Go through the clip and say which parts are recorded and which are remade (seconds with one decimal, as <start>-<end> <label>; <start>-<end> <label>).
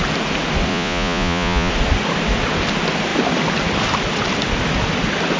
0.0-0.7 recorded; 0.7-1.7 remade; 1.7-5.4 recorded